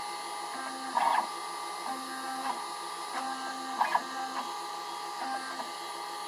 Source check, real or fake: real